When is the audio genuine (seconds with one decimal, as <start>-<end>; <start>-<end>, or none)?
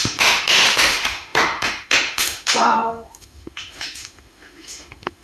none